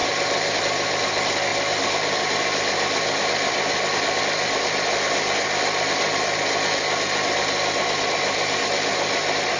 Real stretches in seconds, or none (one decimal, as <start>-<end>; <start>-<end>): 0.0-9.6